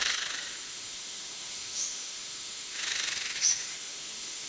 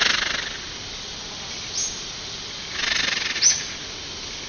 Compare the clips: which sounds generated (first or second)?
first